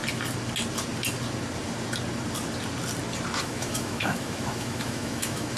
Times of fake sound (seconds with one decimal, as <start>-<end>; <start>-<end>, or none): 3.4-5.6